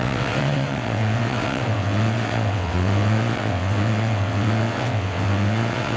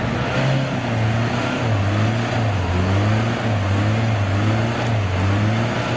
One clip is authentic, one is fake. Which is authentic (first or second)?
second